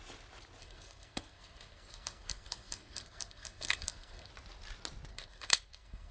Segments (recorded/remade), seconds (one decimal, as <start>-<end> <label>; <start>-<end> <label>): 0.0-0.6 recorded; 0.6-4.3 remade; 4.3-5.1 recorded; 5.1-6.1 remade